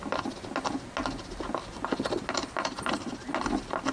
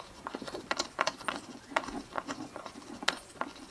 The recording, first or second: first